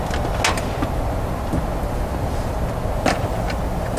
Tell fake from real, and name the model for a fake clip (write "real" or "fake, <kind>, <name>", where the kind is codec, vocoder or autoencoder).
real